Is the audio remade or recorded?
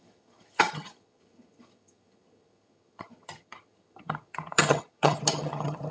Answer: remade